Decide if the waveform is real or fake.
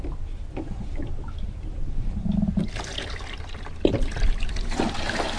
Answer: real